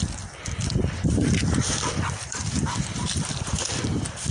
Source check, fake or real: fake